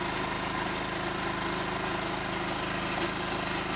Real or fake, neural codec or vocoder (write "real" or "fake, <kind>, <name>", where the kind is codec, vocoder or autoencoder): real